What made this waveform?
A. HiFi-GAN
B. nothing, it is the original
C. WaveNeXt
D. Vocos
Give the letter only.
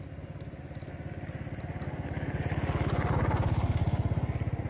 B